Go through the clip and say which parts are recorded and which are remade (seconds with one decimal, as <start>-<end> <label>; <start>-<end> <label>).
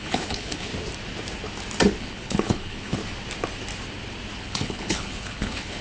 0.0-0.7 remade; 0.7-2.0 recorded; 2.0-3.0 remade; 3.0-4.4 recorded; 4.4-5.8 remade